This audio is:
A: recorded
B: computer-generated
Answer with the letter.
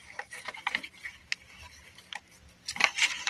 B